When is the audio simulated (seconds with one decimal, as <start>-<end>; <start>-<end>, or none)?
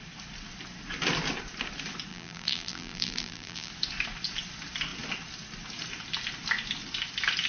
2.1-3.7